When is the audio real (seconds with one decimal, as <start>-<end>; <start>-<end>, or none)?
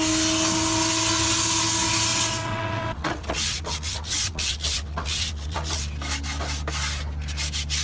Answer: 0.0-2.1; 5.8-7.8